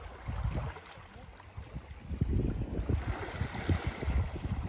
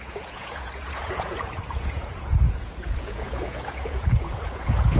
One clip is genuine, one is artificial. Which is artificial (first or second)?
second